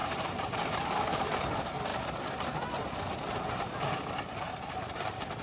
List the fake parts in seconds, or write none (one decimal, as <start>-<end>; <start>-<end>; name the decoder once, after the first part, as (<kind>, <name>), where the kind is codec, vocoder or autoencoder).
0.0-1.4 (vocoder, BigVGAN v2)